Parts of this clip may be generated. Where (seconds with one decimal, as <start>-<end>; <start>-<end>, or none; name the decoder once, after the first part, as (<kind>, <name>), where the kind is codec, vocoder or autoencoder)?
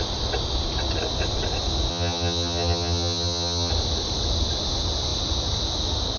1.9-3.7 (vocoder, HiFi-GAN)